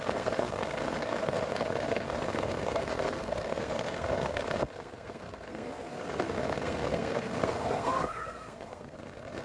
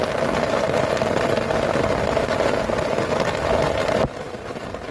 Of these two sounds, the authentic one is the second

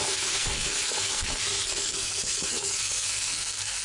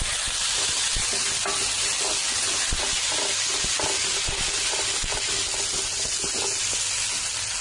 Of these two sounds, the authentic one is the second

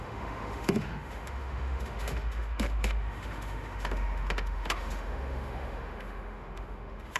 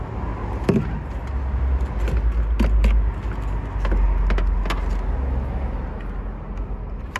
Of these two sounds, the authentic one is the second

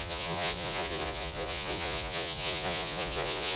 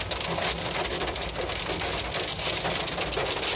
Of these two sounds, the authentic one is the second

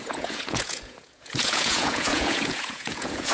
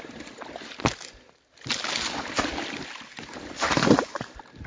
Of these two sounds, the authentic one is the second